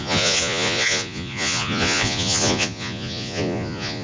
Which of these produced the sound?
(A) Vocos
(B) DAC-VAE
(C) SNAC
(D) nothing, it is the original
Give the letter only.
A